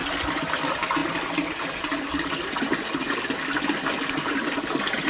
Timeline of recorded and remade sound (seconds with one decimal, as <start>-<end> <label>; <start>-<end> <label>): 0.0-5.1 recorded